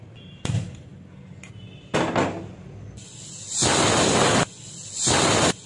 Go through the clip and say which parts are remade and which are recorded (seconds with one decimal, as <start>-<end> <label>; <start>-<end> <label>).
0.0-5.7 recorded